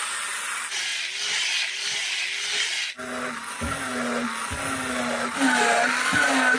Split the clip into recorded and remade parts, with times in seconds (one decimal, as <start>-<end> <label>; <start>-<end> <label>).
0.0-6.6 recorded